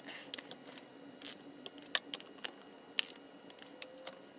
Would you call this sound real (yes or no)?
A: yes